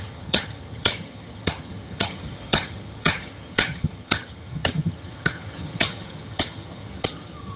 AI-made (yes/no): yes